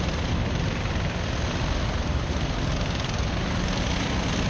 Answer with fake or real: real